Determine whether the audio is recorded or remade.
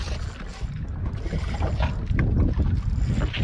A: recorded